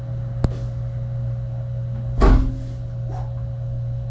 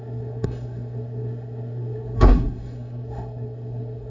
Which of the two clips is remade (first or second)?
second